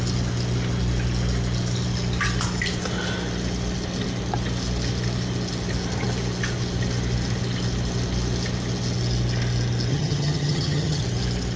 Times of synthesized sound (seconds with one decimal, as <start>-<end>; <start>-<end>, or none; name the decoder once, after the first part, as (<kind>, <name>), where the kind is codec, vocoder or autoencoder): 9.9-11.0 (vocoder, HiFi-GAN)